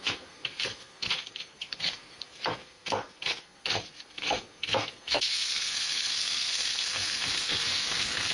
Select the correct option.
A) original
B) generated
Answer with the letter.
B